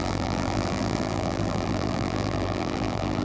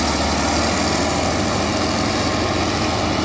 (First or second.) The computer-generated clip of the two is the first